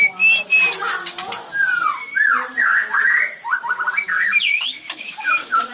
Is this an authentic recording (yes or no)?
yes